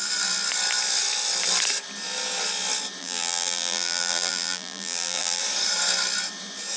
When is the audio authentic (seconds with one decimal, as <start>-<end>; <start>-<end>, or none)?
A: 0.0-3.0; 5.4-6.8

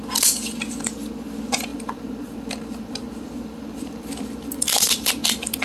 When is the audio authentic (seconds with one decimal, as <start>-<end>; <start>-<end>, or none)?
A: 0.0-1.7; 5.1-5.6

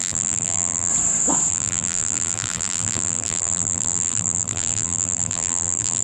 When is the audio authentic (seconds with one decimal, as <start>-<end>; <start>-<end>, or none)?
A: 0.9-1.5

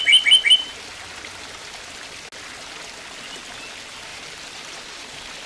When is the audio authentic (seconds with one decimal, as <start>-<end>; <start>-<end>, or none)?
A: 0.0-5.5

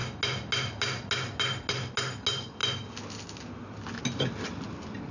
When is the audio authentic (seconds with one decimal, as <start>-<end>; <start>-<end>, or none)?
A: 0.0-5.1

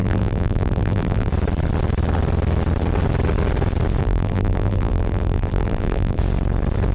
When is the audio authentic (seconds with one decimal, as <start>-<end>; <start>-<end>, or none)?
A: 1.3-4.0; 6.2-6.9